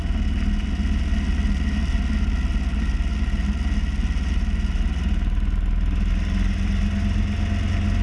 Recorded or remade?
recorded